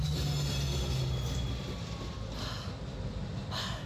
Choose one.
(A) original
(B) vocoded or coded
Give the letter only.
A